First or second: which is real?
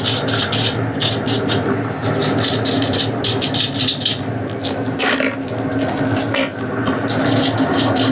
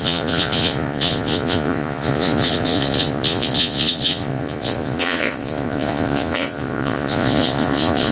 first